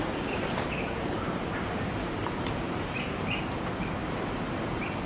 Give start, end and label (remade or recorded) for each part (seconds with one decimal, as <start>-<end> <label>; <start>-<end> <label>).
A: 0.0-5.1 remade